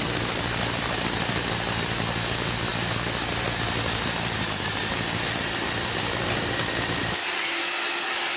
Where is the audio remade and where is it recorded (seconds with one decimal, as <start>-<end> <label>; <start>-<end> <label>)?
0.0-8.4 recorded